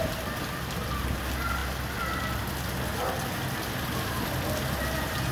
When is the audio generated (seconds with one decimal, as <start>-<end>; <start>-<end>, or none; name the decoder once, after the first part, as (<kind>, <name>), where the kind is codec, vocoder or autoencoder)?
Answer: none